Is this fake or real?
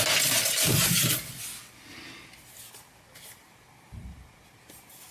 real